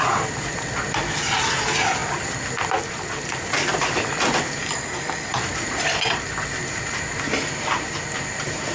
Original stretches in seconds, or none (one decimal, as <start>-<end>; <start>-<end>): 0.0-4.6; 5.3-8.7